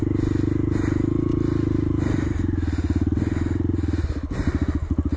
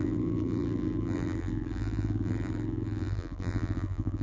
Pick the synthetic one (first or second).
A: second